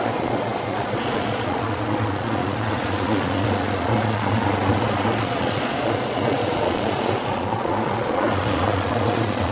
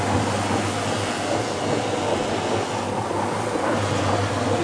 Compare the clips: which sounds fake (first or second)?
first